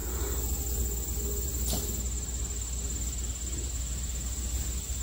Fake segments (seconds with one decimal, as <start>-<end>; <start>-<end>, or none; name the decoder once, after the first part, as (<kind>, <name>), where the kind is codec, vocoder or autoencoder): none